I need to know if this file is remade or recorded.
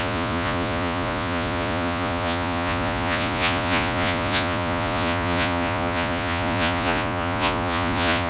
remade